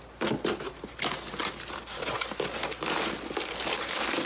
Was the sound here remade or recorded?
recorded